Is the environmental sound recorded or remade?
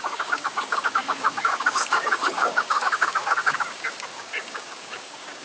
remade